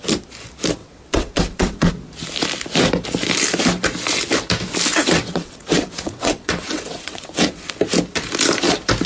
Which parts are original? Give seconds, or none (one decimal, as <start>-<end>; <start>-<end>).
0.0-0.8; 1.9-4.9; 7.7-9.1